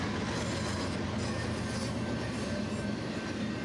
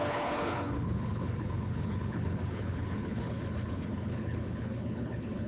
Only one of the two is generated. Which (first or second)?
second